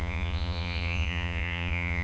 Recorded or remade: remade